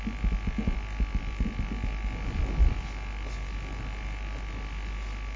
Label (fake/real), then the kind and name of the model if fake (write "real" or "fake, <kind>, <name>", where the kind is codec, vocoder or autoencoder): real